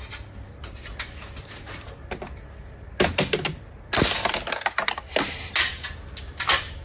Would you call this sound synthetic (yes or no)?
no